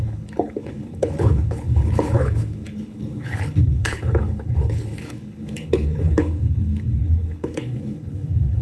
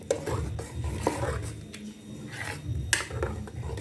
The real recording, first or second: second